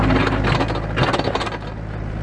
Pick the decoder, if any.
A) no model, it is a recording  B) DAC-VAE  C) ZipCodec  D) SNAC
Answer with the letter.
A